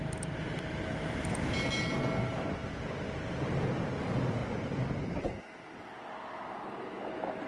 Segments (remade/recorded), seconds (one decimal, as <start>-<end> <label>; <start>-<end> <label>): 0.0-7.5 recorded